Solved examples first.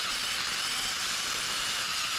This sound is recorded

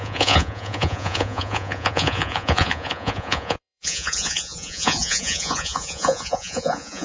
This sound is remade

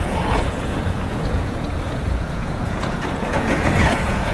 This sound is remade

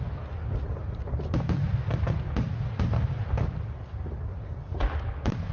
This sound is recorded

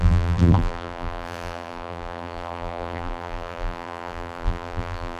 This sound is remade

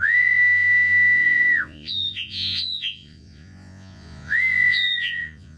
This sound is remade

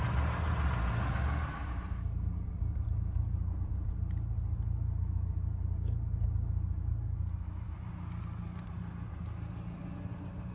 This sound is recorded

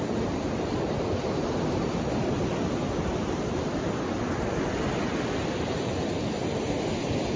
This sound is recorded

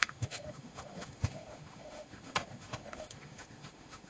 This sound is remade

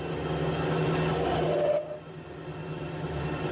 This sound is recorded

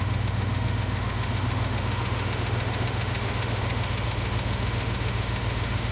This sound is remade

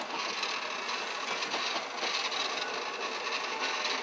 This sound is recorded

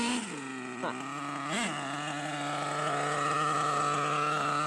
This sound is recorded